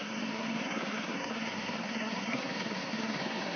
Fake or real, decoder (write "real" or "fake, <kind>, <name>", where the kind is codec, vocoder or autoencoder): fake, codec, SNAC